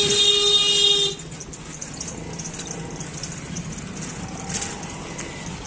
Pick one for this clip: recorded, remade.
recorded